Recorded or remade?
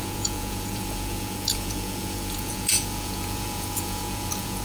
remade